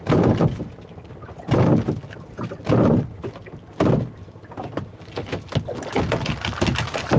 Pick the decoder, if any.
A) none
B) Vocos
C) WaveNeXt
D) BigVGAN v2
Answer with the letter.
A